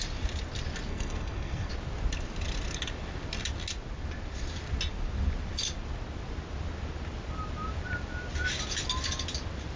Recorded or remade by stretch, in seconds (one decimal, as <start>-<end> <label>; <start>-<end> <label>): 0.0-0.9 recorded; 0.9-1.7 remade; 1.7-9.8 recorded